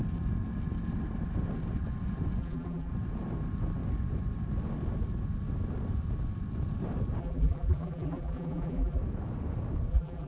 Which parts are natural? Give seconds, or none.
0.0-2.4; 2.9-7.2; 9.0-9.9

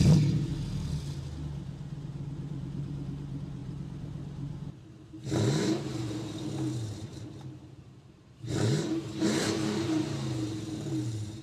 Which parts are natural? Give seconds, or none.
0.5-2.1